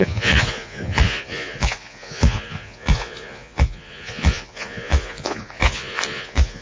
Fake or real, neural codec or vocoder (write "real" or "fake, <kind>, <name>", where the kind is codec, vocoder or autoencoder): fake, vocoder, Vocos